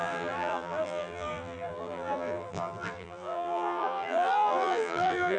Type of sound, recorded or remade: remade